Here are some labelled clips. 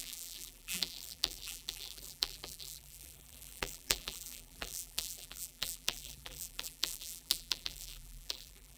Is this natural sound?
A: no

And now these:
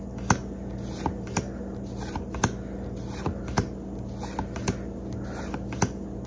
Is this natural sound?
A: yes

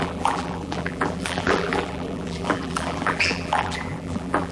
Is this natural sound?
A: no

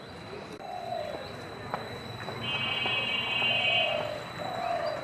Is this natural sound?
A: yes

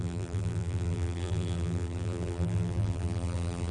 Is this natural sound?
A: no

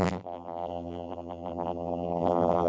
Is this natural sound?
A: no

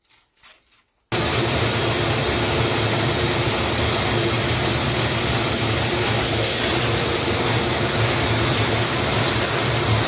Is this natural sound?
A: yes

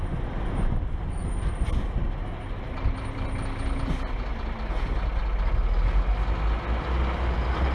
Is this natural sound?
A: yes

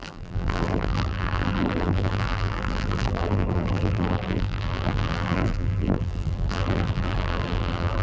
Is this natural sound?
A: no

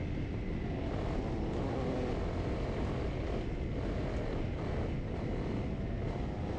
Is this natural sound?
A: yes